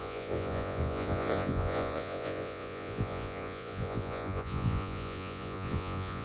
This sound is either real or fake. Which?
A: fake